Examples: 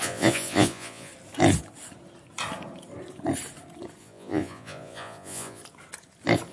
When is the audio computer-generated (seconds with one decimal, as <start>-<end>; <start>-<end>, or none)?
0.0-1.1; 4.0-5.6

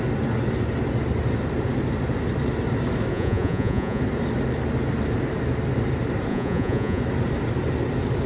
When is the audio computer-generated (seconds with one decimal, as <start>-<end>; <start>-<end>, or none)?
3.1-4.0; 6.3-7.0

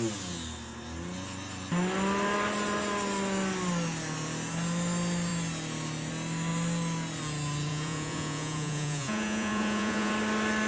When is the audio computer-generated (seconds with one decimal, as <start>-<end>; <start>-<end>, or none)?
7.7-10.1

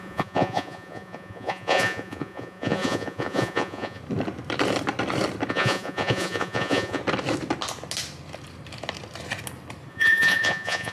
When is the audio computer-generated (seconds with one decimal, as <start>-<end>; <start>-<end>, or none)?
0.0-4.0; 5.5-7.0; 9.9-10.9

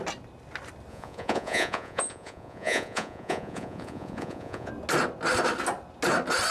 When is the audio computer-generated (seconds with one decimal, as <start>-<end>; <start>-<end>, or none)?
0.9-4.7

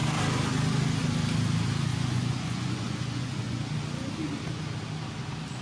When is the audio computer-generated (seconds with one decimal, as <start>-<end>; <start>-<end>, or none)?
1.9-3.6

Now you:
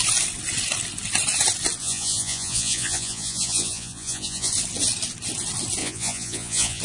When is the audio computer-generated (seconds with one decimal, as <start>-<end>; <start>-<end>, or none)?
1.8-4.5; 5.8-6.8

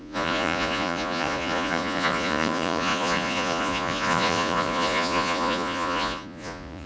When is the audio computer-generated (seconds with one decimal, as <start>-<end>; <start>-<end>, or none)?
0.0-6.9